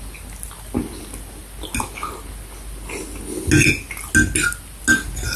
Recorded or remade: recorded